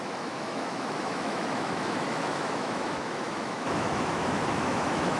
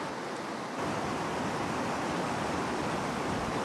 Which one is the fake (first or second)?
first